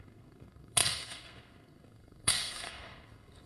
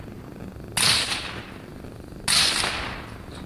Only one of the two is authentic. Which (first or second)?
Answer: second